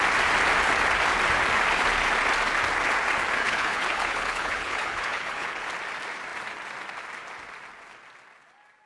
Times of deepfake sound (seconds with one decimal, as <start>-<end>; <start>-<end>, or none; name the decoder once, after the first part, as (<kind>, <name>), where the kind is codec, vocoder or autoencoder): 3.4-5.6 (codec, HILCodec)